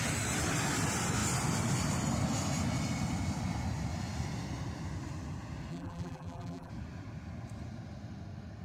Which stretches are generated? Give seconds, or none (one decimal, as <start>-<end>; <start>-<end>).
5.7-6.7